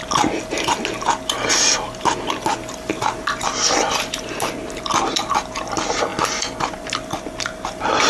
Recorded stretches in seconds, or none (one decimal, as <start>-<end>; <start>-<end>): 0.0-8.1